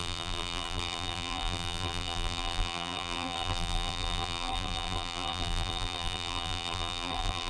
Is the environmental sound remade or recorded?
remade